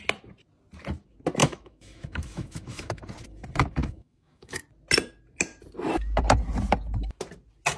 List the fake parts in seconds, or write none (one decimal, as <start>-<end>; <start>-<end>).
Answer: 1.4-3.0; 3.8-4.6